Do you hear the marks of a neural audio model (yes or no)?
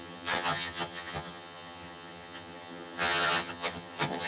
yes